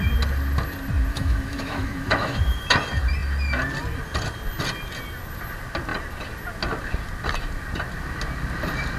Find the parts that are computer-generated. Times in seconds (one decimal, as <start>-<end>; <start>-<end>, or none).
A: 1.1-2.7